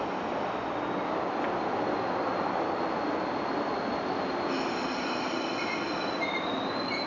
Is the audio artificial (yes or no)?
no